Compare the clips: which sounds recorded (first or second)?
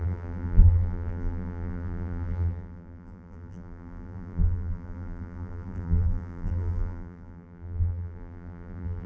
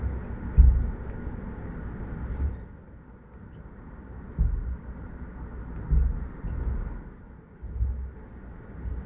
second